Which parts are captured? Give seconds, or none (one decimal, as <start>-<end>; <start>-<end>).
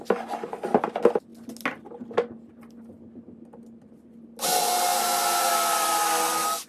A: 0.0-4.9; 5.5-6.7